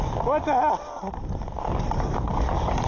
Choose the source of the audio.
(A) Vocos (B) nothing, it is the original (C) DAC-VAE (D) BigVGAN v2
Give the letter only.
B